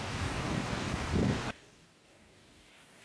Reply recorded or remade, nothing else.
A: remade